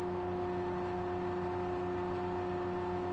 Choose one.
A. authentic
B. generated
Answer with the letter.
A